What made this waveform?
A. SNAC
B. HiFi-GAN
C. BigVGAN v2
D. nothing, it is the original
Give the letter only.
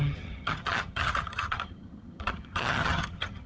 B